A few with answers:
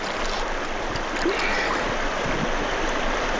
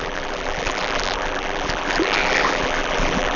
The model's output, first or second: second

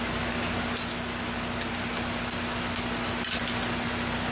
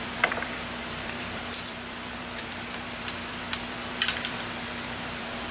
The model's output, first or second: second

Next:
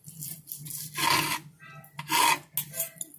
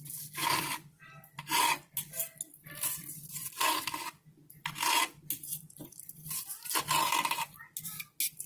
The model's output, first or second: second